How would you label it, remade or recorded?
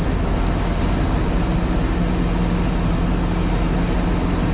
recorded